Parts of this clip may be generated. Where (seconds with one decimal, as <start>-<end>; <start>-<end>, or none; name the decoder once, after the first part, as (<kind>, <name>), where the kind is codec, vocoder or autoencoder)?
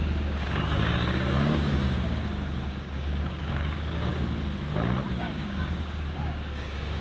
0.0-4.1 (codec, DAC); 5.1-7.0